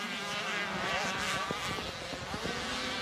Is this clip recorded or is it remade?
recorded